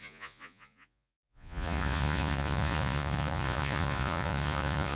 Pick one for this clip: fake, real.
fake